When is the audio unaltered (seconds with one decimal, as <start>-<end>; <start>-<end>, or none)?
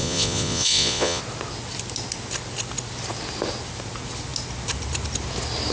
1.2-5.7